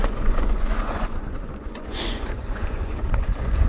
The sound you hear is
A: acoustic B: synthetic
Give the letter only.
B